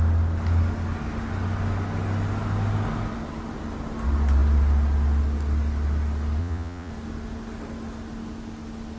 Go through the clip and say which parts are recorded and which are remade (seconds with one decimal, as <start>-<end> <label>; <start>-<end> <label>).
0.0-6.4 recorded; 6.4-6.9 remade; 6.9-9.0 recorded